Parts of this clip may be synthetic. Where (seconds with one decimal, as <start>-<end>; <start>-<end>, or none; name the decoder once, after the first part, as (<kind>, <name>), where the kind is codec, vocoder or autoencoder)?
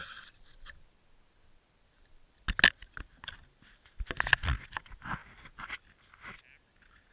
none